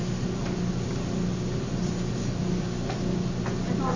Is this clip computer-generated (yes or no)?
no